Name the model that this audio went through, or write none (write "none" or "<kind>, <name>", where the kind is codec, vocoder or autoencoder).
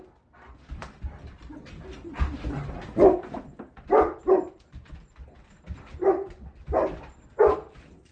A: vocoder, BigVGAN v2